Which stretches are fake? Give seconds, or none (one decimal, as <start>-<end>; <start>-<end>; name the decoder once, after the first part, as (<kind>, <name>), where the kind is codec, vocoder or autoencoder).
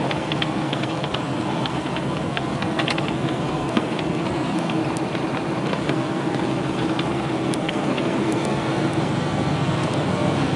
0.0-4.8 (codec, SNAC); 5.6-10.6